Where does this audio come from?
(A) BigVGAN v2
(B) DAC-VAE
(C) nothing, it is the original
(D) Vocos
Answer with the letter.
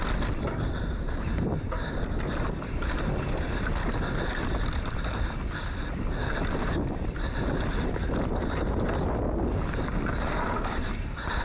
C